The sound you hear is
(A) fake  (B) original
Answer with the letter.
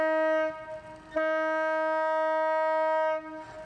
B